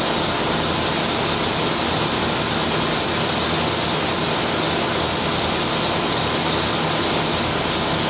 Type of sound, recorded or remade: recorded